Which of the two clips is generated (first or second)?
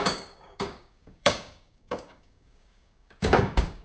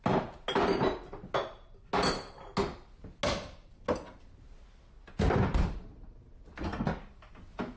first